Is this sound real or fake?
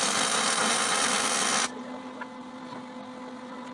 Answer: real